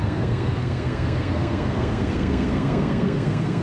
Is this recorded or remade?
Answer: remade